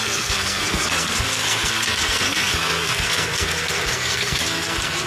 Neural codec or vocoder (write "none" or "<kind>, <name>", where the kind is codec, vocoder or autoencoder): codec, SNAC